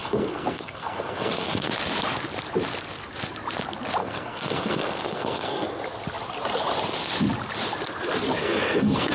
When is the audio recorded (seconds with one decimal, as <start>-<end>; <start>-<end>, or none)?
1.7-4.0; 5.8-8.4